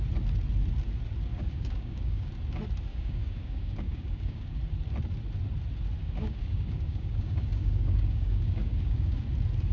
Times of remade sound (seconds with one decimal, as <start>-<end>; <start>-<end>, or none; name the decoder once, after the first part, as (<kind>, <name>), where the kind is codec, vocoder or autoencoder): 1.3-2.3 (codec, DAC); 2.9-4.6; 6.0-9.2